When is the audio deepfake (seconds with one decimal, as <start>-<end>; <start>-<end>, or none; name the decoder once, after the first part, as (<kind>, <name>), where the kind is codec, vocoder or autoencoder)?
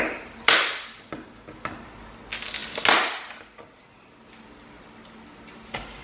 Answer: none